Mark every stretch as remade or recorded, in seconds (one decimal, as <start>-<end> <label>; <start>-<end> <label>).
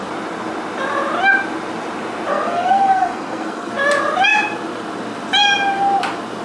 0.0-2.3 recorded; 2.3-3.7 remade; 3.7-6.4 recorded